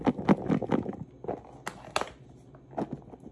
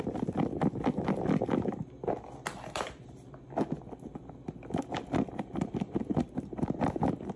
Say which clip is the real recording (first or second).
first